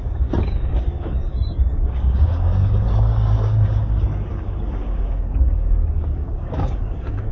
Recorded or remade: remade